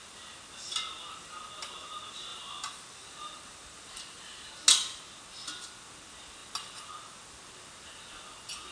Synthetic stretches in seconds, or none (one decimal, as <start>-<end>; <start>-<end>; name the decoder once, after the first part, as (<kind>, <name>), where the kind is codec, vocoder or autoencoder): 2.3-4.5 (vocoder, BigVGAN v2)